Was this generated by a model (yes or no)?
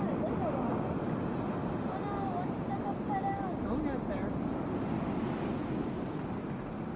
no